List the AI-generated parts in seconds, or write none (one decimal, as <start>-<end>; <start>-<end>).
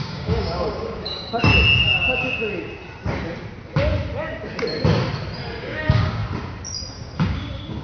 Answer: 0.0-1.5; 5.6-6.2; 6.9-7.8